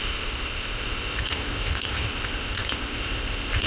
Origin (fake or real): fake